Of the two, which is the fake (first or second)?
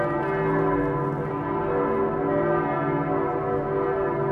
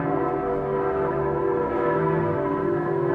second